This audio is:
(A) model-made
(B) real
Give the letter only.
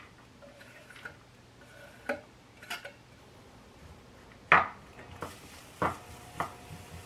B